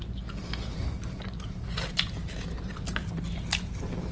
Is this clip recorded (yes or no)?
yes